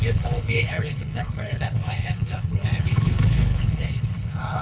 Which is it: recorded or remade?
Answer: remade